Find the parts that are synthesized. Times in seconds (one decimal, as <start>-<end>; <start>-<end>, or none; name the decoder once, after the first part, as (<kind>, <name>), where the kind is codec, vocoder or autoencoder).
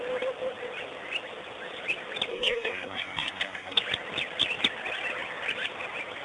2.3-3.8 (codec, SNAC)